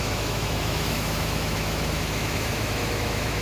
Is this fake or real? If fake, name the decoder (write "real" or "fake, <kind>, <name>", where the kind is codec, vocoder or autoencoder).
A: fake, autoencoder, DAC-VAE